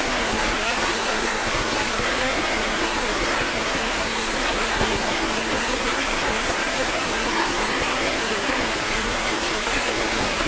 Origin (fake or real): fake